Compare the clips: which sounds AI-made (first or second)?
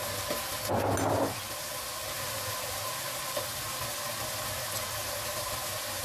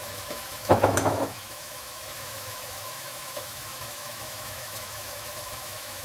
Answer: second